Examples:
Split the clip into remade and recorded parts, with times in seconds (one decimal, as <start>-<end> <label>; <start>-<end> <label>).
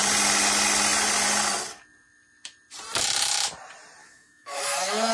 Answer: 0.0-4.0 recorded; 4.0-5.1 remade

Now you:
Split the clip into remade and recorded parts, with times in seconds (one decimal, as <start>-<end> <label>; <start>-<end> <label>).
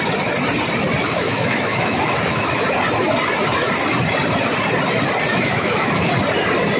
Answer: 0.0-1.0 recorded; 1.0-2.6 remade; 2.6-5.3 recorded; 5.3-6.1 remade; 6.1-6.8 recorded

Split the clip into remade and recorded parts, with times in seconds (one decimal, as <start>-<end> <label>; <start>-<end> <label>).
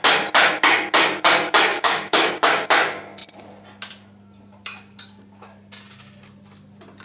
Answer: 0.0-1.7 recorded; 1.7-2.3 remade; 2.3-7.0 recorded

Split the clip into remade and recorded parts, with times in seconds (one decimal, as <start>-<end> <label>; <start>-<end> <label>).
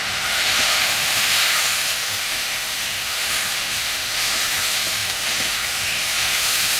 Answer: 0.0-6.8 remade